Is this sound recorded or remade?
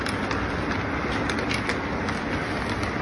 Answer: recorded